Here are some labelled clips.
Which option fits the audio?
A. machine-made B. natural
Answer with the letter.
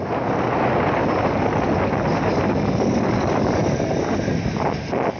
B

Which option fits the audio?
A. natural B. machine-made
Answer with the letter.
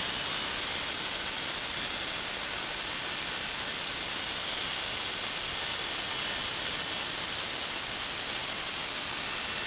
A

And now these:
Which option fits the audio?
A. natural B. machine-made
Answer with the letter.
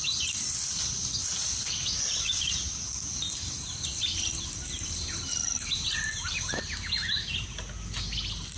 A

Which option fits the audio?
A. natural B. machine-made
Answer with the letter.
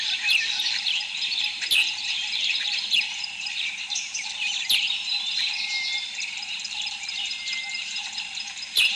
B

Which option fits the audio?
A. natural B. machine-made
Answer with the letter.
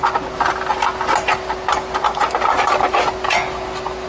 A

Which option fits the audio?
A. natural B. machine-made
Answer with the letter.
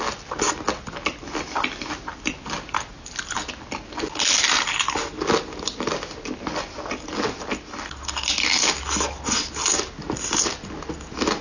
A